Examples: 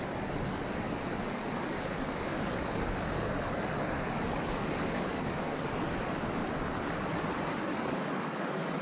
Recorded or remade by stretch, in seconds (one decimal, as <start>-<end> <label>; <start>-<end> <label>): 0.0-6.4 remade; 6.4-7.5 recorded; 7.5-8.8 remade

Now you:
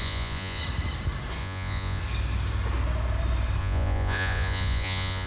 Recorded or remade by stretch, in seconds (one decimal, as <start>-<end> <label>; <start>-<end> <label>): 0.0-0.6 remade; 0.6-1.4 recorded; 1.4-2.0 remade; 2.0-3.6 recorded; 3.6-5.3 remade

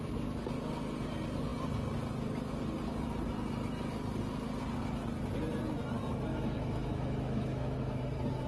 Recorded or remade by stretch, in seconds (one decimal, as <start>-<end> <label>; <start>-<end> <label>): 0.0-6.3 recorded; 6.3-8.0 remade; 8.0-8.5 recorded

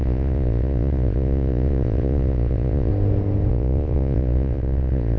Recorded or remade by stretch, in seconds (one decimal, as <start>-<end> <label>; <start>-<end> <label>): 0.0-2.9 remade; 2.9-3.5 recorded; 3.5-5.2 remade

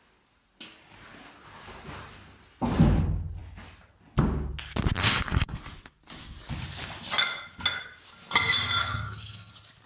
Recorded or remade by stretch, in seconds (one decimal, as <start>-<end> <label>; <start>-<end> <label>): 0.0-5.0 recorded; 5.0-5.6 remade; 5.6-8.8 recorded; 8.8-9.5 remade; 9.5-9.9 recorded